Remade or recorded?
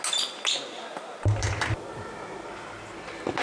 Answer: recorded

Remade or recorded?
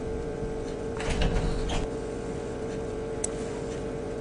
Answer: remade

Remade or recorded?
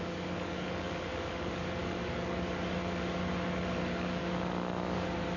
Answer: remade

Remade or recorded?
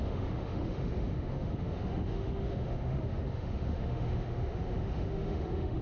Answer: remade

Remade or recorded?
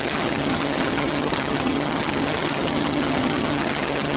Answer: remade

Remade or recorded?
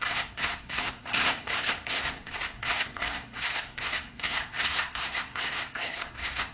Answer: remade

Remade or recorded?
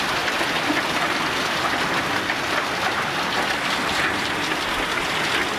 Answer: recorded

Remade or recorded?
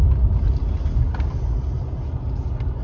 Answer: recorded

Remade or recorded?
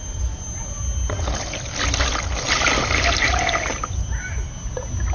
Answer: recorded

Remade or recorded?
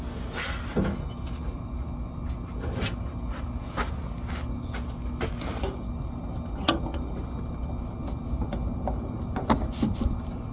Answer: recorded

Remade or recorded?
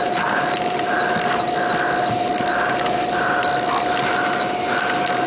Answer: recorded